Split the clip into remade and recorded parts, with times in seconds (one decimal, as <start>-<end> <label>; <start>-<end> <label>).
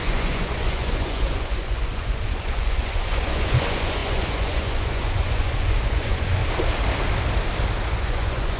0.0-6.4 remade; 6.4-7.9 recorded; 7.9-8.6 remade